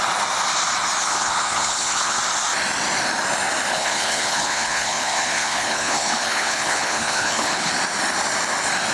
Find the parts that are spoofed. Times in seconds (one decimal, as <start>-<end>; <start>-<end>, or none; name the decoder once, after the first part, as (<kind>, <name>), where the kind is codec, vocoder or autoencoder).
1.0-2.2 (codec, HILCodec); 3.7-7.7